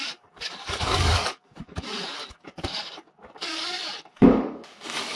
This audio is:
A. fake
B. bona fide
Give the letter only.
A